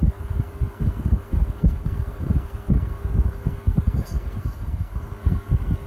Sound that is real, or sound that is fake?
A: fake